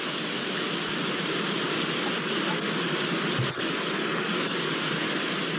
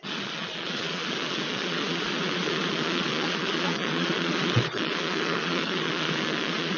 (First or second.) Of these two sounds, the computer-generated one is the second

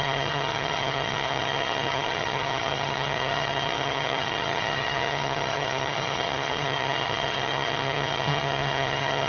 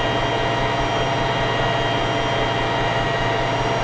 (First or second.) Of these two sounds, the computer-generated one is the first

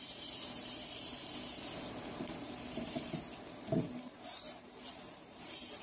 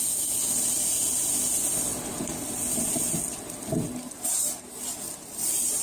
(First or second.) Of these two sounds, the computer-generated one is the first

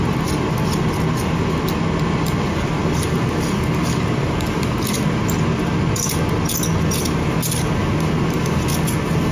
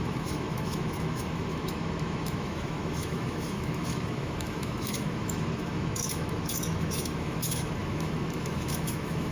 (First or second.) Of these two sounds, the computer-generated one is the second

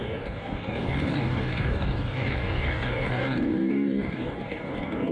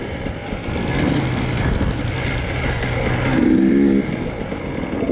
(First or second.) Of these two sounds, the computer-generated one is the first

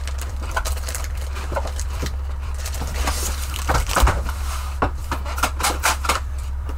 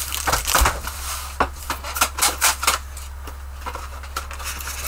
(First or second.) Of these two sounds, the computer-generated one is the first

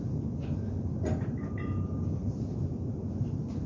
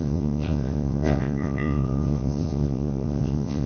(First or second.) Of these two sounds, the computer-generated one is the second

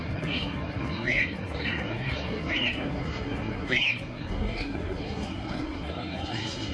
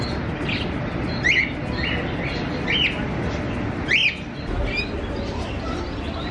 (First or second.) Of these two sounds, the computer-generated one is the first